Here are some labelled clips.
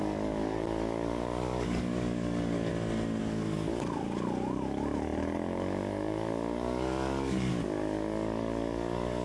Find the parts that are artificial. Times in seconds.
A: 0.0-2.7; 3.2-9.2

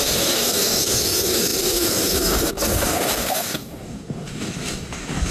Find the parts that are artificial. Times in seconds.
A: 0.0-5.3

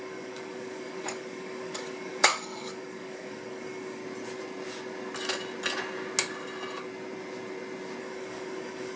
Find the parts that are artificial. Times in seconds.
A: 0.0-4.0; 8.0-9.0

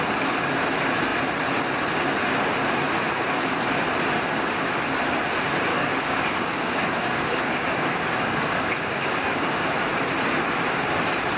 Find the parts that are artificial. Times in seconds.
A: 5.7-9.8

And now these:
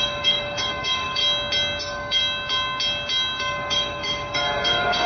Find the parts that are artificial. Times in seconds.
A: 0.0-1.2; 1.8-2.2; 3.4-5.1

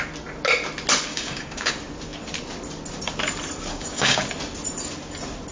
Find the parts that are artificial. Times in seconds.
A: 1.1-1.7; 3.7-4.2